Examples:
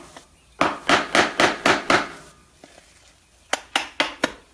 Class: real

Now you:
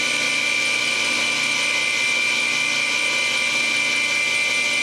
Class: real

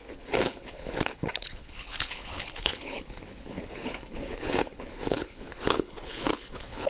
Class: fake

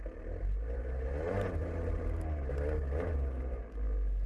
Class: real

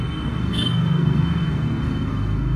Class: fake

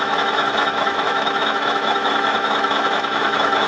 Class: fake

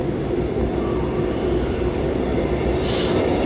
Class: real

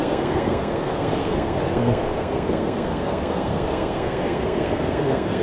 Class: fake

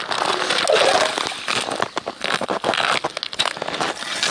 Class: real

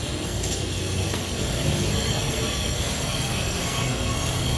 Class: fake